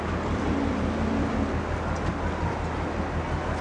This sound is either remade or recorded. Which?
recorded